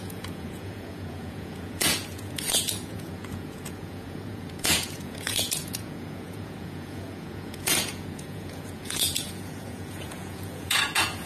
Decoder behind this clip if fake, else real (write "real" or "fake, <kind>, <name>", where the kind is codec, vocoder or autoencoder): fake, vocoder, Vocos